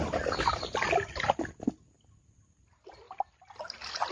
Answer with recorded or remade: recorded